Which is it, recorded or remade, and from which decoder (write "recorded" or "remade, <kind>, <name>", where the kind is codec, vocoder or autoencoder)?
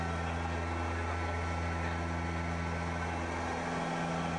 recorded